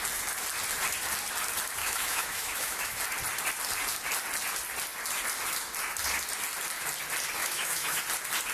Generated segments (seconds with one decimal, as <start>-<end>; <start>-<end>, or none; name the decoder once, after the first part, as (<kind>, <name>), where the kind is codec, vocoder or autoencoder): 1.8-3.0 (autoencoder, DAC-VAE); 7.4-8.0